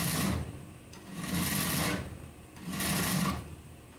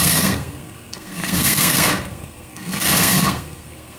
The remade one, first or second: second